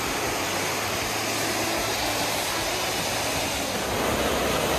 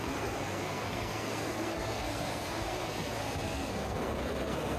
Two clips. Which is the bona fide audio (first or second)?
first